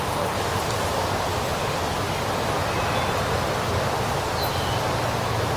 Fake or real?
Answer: real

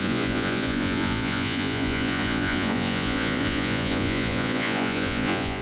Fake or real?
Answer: fake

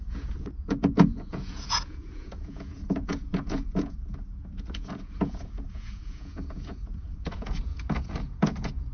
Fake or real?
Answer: fake